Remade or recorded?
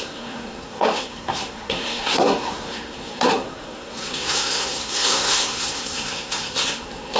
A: remade